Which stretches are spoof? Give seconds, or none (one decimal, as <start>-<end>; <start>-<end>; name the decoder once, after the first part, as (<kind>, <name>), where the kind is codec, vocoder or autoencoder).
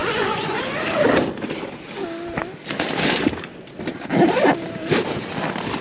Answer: 0.0-0.6 (vocoder, Vocos)